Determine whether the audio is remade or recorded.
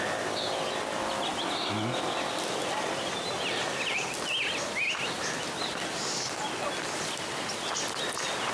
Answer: recorded